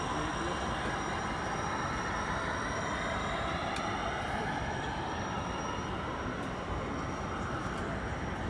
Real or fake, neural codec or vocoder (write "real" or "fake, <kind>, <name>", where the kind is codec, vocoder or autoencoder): real